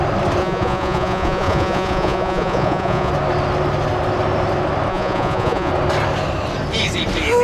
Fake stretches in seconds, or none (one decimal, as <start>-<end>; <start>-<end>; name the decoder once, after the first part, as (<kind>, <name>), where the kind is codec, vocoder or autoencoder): 0.4-3.1 (vocoder, Vocos); 4.9-5.7